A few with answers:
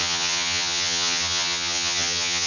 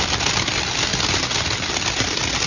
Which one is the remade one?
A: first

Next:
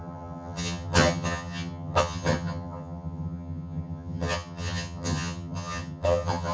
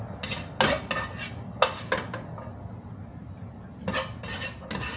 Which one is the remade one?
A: first